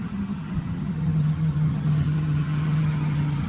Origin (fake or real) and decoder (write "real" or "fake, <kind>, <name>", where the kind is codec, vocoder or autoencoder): fake, vocoder, HiFi-GAN